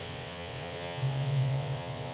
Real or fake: fake